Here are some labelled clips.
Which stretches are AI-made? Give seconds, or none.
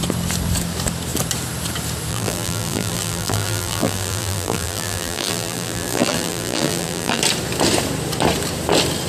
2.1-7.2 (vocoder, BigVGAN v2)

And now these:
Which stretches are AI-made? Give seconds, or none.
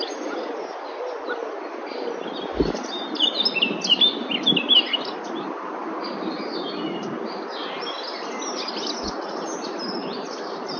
none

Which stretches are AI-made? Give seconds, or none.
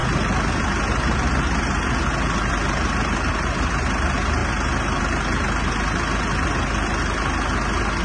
none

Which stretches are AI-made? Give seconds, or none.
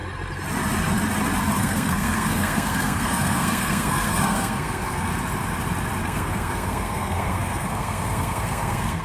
1.6-5.1 (codec, SNAC); 6.0-9.0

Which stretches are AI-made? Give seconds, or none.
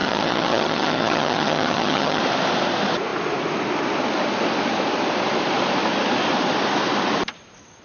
0.0-2.2 (vocoder, HiFi-GAN)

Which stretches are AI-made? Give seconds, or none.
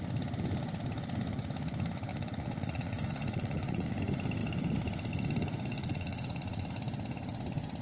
2.1-4.0 (vocoder, Vocos); 5.7-6.7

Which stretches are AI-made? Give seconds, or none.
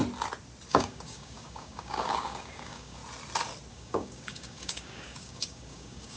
0.7-3.0 (codec, DAC); 3.7-6.2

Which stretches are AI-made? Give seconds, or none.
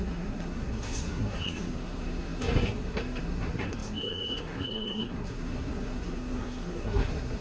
0.0-7.4 (codec, SNAC)